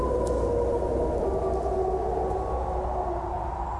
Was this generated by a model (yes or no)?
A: no